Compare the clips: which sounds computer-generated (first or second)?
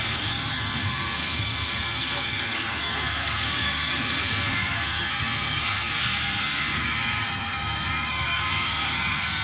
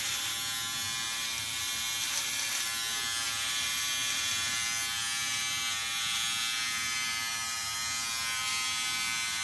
first